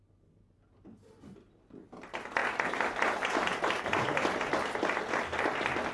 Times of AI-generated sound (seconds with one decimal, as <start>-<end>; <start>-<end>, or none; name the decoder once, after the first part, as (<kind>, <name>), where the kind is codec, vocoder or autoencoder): none